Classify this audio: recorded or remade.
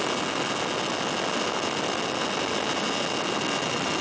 recorded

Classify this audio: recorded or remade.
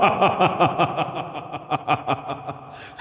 recorded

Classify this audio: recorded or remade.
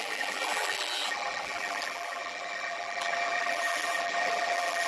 remade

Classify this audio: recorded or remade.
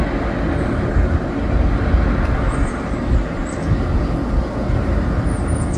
recorded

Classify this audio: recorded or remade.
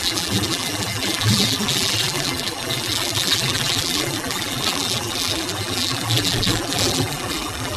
remade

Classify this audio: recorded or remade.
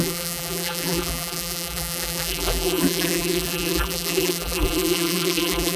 remade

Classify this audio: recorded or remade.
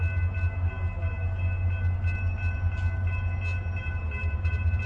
recorded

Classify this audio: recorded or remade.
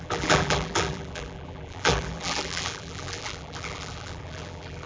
remade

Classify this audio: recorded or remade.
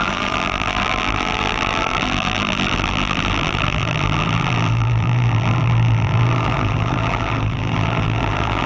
remade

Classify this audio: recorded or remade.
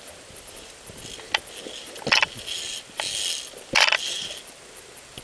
recorded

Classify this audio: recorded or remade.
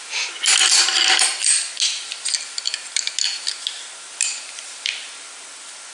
recorded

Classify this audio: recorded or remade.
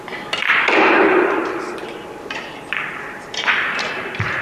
recorded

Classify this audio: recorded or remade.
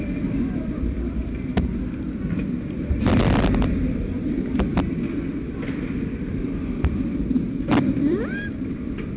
remade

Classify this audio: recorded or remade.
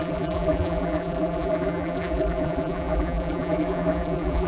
remade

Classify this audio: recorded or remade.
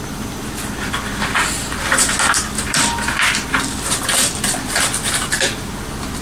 remade